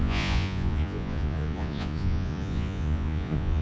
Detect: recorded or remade remade